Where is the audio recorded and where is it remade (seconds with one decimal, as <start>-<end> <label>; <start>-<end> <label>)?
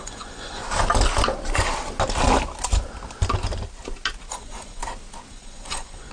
0.0-0.6 remade; 0.6-4.3 recorded; 4.3-4.8 remade; 4.8-5.3 recorded; 5.3-6.1 remade